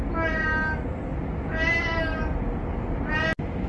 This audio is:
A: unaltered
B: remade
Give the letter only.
A